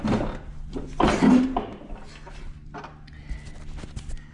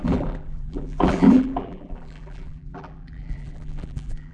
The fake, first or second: second